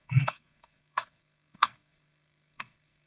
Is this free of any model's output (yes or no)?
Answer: no